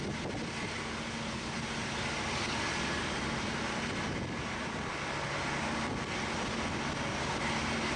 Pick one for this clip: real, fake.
real